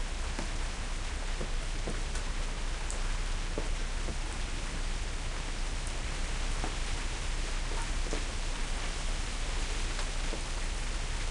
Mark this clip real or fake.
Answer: real